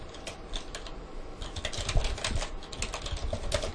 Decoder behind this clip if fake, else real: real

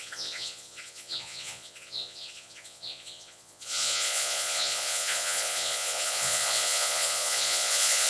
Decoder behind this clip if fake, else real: fake, vocoder, Vocos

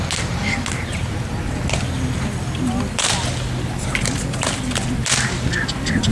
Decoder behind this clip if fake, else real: real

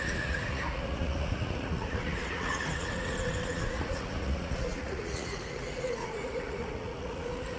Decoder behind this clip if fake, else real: fake, vocoder, Vocos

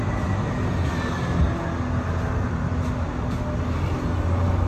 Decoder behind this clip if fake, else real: real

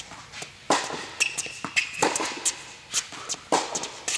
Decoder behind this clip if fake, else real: real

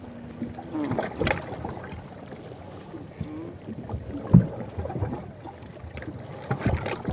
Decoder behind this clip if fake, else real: real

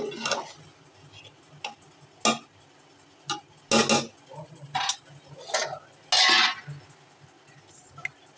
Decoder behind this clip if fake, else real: real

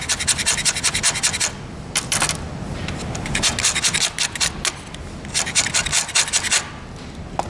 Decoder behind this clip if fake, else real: real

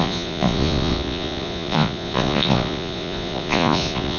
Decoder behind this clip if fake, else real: fake, vocoder, Vocos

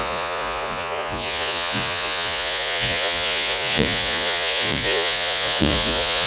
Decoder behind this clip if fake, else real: fake, vocoder, Vocos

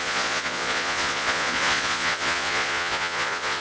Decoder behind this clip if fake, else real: fake, vocoder, Vocos